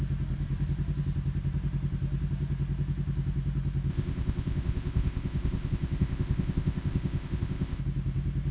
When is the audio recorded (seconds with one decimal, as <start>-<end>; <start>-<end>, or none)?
0.0-3.9; 7.8-8.5